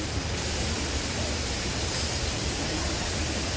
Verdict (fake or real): real